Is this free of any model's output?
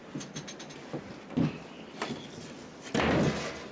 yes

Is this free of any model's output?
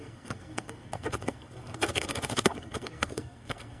no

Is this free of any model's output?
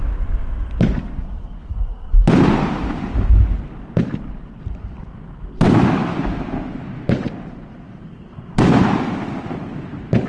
yes